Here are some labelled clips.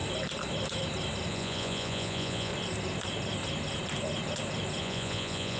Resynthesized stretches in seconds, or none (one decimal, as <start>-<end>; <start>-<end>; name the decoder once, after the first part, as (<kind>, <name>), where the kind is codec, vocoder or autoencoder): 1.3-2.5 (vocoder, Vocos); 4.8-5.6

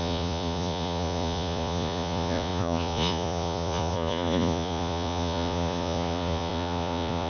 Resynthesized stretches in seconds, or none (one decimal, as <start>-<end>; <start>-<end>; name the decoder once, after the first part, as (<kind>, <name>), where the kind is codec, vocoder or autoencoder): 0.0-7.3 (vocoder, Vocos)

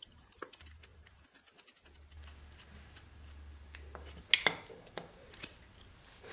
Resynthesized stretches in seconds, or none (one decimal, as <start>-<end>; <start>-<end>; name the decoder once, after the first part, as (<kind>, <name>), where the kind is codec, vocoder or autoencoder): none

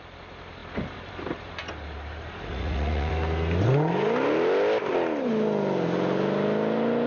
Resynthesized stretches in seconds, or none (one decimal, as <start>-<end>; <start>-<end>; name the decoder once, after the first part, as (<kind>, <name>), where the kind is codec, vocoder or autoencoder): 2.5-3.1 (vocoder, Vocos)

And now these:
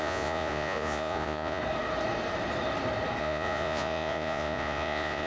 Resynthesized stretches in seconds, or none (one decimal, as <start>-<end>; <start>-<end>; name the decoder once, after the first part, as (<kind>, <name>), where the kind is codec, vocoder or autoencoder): 0.0-1.6 (vocoder, Vocos); 3.2-5.3

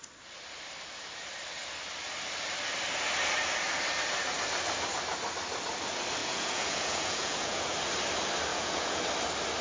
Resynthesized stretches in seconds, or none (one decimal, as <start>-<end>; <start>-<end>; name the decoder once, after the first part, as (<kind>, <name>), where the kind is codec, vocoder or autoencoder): 6.2-7.7 (vocoder, Vocos); 8.5-9.0